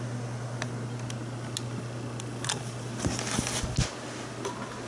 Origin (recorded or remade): recorded